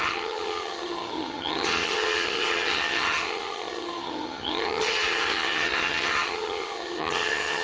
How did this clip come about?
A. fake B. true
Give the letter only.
A